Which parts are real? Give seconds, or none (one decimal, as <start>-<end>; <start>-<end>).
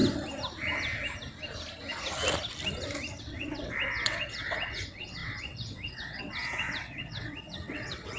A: 0.0-3.2